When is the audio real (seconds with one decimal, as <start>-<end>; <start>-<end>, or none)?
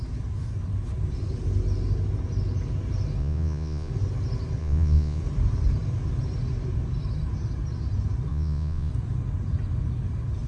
0.0-3.2; 3.9-4.6; 5.2-8.3; 8.9-10.5